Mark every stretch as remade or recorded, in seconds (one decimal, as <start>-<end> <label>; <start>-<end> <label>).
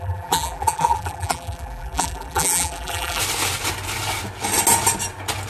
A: 0.0-3.2 remade; 3.2-5.5 recorded